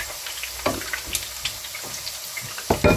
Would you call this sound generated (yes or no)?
no